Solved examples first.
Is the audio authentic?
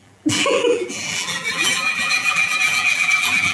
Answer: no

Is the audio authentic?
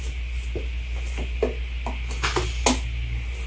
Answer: yes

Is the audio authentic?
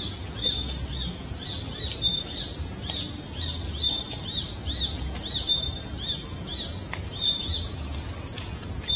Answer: yes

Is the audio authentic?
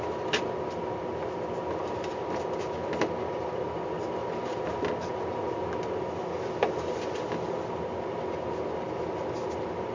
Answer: yes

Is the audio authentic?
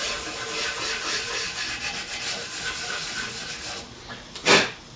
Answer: yes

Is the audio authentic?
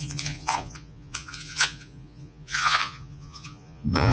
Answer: no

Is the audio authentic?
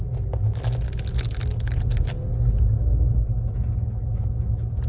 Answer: yes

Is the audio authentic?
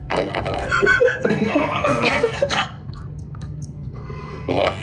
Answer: no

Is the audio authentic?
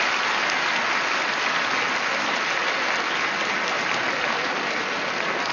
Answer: yes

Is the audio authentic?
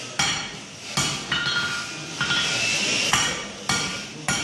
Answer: yes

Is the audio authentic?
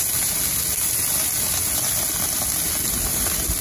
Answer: yes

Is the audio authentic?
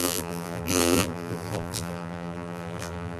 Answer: no